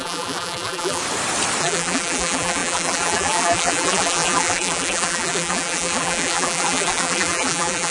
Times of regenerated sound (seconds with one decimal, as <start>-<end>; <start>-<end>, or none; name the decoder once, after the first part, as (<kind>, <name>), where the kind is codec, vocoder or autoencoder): 0.0-1.0 (vocoder, BigVGAN v2); 1.6-7.9